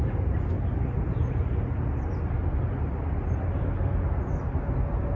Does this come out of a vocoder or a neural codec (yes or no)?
no